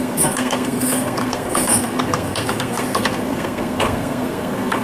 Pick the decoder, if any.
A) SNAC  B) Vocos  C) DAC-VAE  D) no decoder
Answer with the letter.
A